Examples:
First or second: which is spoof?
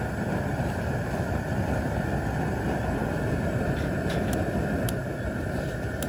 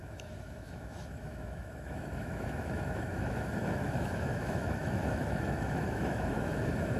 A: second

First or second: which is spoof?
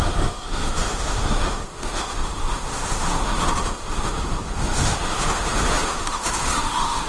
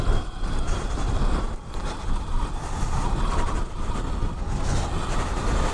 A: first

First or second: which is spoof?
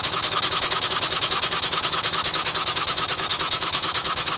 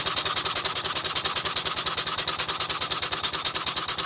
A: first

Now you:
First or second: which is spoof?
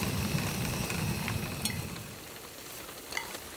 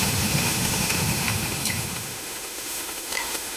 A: second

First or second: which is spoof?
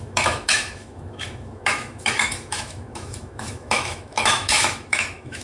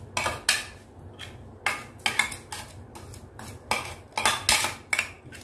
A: first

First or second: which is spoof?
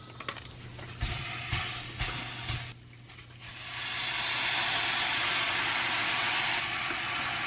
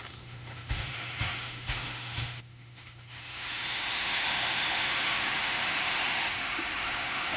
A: second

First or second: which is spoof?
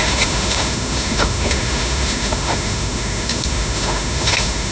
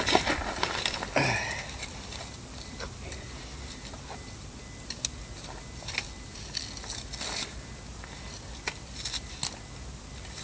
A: first